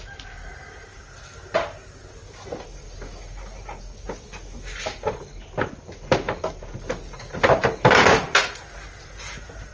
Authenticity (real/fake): real